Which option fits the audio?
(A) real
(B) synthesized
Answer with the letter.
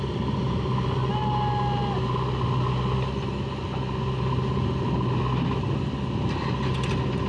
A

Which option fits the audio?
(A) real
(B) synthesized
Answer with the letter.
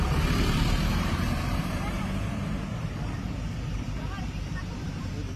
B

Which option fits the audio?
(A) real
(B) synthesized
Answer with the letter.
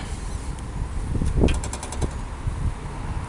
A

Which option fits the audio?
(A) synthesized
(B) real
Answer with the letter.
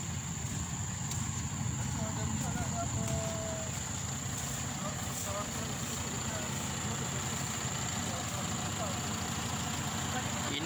B